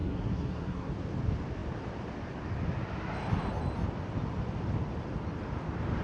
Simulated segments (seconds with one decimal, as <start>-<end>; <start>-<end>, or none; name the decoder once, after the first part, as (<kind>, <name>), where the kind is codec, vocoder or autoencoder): 0.0-0.9 (codec, SNAC)